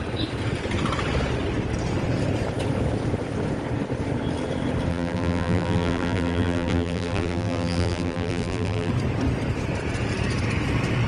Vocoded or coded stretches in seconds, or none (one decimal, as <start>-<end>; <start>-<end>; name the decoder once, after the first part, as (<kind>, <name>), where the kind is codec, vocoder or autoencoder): 4.9-8.9 (vocoder, BigVGAN v2)